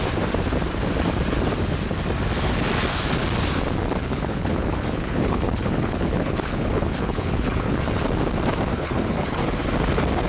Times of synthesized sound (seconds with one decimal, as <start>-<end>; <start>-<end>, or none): 4.1-7.8; 8.7-9.4